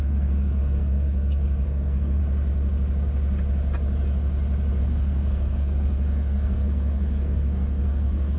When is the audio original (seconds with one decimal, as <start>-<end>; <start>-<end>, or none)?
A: 2.2-4.8